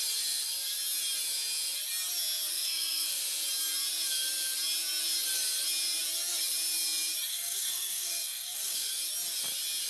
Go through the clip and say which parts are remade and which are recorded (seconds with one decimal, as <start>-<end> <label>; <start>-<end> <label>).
0.0-2.5 recorded; 2.5-3.2 remade; 3.2-7.3 recorded; 7.3-8.9 remade; 8.9-9.9 recorded